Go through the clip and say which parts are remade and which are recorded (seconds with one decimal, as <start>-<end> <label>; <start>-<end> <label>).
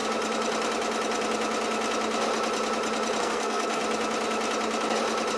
0.0-3.2 recorded; 3.2-3.8 remade; 3.8-5.4 recorded